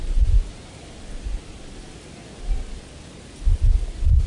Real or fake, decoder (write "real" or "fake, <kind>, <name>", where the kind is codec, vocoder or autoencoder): real